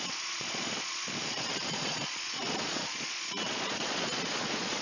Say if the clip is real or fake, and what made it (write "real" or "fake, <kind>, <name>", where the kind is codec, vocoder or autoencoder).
fake, vocoder, Vocos